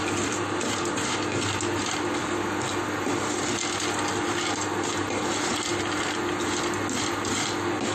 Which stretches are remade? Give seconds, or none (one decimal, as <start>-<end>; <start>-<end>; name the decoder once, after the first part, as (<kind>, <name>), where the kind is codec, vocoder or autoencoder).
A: none